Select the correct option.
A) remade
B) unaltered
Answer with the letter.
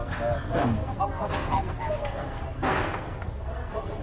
A